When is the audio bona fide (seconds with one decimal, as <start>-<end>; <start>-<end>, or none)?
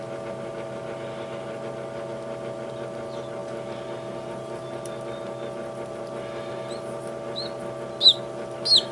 0.0-8.9